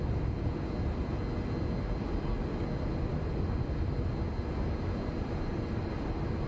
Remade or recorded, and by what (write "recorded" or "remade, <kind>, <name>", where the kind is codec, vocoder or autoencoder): recorded